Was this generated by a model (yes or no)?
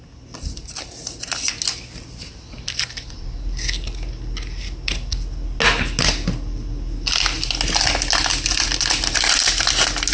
no